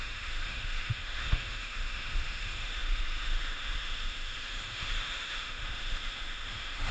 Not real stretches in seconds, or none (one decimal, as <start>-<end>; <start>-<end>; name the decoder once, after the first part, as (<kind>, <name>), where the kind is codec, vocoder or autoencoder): 0.0-6.9 (autoencoder, DAC-VAE)